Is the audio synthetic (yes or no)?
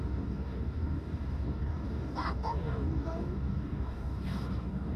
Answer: yes